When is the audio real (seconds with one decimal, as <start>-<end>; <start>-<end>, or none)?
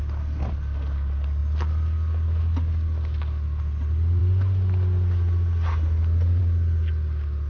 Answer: 0.0-7.5